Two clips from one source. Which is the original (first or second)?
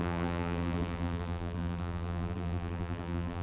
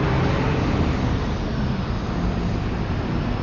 second